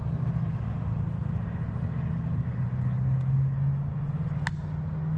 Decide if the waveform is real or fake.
real